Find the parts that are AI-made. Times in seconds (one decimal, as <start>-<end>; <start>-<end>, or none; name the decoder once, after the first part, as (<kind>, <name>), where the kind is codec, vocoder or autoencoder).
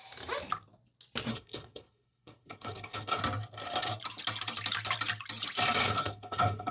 1.3-3.2 (codec, HILCodec); 5.8-6.7